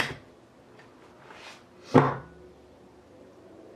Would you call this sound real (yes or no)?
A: yes